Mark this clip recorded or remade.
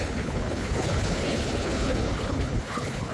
remade